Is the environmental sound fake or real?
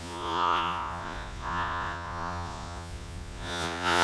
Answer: fake